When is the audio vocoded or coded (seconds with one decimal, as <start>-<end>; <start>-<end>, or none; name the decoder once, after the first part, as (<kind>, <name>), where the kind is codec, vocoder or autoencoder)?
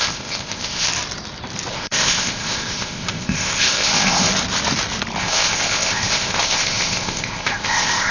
0.0-0.9 (codec, ZipCodec); 1.7-4.3; 5.2-8.1